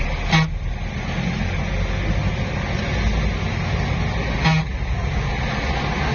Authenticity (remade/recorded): recorded